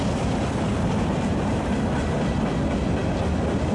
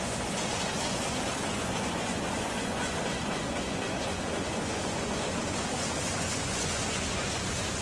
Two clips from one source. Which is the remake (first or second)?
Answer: second